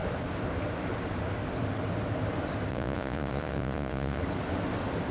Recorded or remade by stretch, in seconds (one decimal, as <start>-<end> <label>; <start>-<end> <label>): 0.0-2.7 recorded; 2.7-4.2 remade; 4.2-5.1 recorded